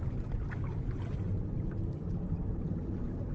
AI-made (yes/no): no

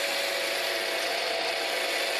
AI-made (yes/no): no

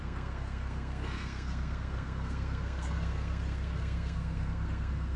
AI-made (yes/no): yes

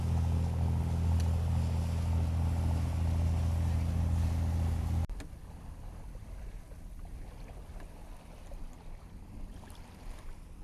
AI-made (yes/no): no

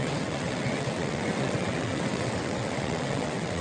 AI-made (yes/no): yes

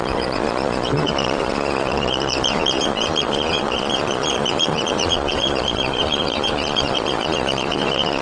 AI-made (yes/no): yes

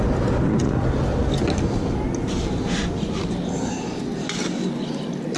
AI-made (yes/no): no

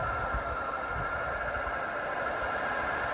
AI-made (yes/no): no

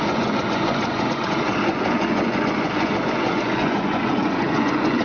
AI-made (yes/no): yes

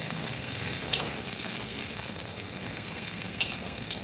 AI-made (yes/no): yes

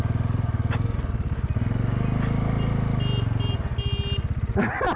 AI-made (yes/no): no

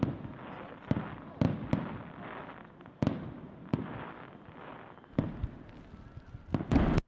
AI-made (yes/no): no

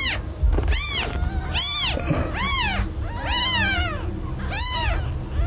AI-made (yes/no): no